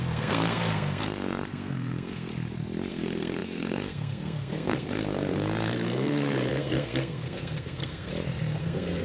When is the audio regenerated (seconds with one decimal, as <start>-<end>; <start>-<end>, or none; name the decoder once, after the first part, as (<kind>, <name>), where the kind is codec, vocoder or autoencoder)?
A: 0.0-2.3 (codec, SNAC); 2.9-8.1; 8.6-9.0